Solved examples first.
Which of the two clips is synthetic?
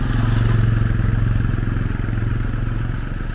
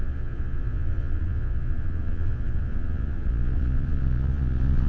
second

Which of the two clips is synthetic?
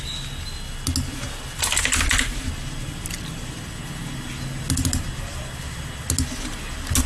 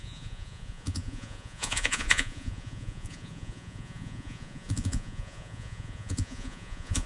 second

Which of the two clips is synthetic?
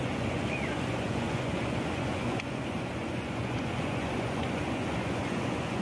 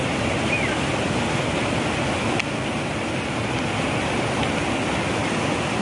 first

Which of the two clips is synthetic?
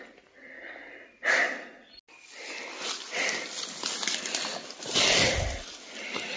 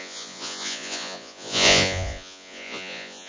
second